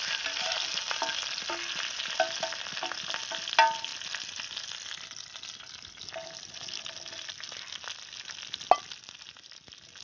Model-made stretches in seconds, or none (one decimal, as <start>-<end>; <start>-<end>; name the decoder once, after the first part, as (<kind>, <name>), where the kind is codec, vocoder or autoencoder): none